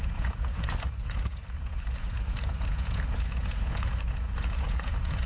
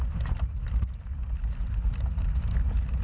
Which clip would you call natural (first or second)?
second